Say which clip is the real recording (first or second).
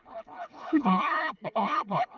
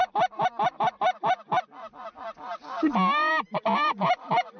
second